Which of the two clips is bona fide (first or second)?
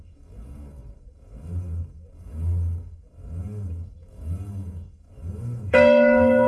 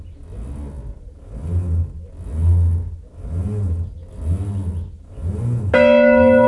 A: second